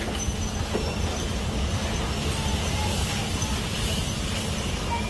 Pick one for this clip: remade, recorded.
recorded